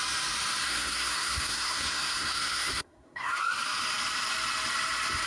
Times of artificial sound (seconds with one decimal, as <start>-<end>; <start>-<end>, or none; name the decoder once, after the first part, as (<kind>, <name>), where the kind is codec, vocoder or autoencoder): 0.6-3.4 (codec, SNAC)